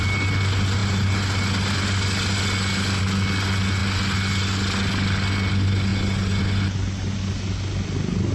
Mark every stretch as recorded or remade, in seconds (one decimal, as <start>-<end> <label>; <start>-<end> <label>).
0.0-8.3 recorded